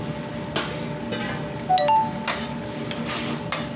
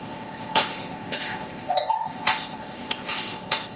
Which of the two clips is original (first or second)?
first